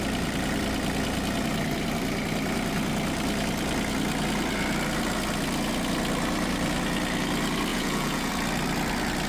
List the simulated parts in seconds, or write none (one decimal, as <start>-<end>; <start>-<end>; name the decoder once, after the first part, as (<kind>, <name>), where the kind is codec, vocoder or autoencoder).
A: 7.7-8.3 (vocoder, Vocos)